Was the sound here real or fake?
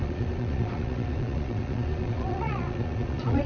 fake